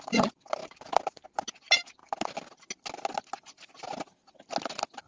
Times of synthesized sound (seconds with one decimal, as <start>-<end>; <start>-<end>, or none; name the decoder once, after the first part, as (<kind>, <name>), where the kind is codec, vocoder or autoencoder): none